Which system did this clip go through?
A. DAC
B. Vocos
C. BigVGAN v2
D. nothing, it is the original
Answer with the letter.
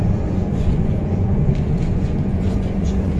B